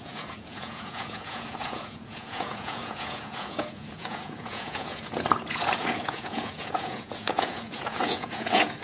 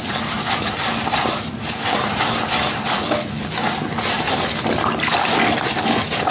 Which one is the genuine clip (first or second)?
second